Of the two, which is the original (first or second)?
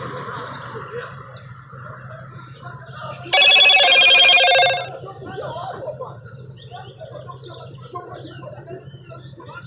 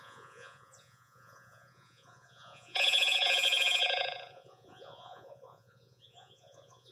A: first